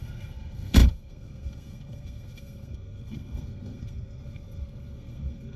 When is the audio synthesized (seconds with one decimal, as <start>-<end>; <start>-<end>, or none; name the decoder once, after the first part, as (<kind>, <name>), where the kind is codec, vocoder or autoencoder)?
0.0-5.6 (codec, SNAC)